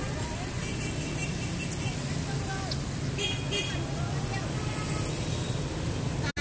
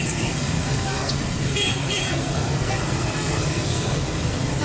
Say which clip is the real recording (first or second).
first